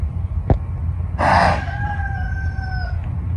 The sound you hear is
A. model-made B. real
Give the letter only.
B